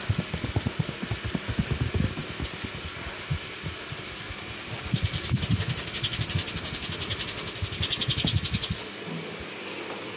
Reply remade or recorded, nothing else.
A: recorded